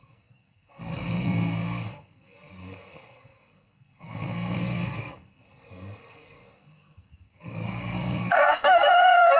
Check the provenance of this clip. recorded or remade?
remade